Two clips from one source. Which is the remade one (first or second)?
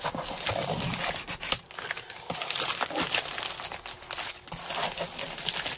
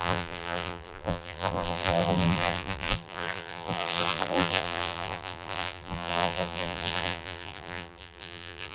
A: second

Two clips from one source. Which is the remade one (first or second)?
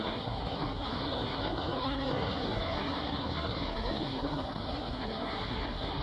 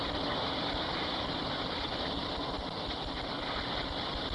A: first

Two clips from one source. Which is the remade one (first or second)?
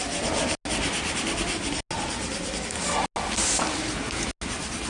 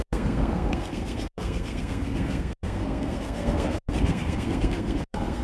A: second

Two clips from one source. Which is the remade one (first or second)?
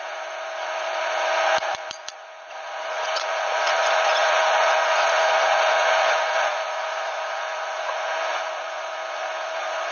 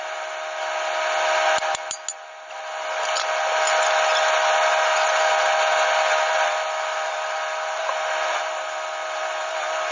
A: first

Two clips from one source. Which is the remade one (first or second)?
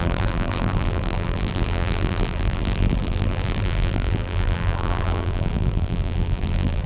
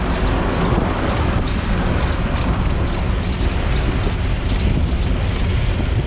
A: first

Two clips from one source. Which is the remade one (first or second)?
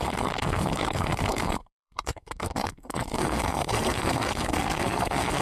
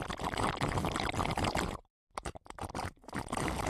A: first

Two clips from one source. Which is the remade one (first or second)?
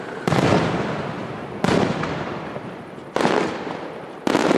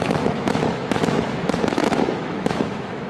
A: second